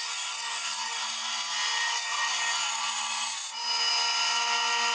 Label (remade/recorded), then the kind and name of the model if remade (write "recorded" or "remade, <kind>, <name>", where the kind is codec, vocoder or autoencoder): recorded